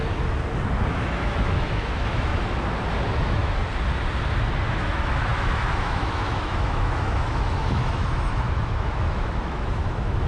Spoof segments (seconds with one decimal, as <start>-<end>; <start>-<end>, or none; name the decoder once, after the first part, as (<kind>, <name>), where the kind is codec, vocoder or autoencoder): 0.9-2.3 (autoencoder, DAC-VAE); 3.2-3.6; 4.7-10.3